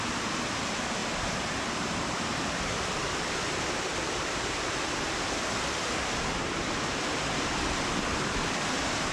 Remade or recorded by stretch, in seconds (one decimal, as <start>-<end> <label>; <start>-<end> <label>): 0.0-1.0 recorded; 1.0-2.5 remade; 2.5-9.1 recorded